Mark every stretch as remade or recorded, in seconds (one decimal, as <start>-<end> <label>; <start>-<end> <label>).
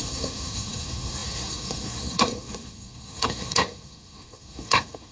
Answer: 0.0-5.1 remade